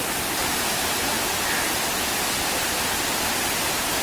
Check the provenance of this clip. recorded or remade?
recorded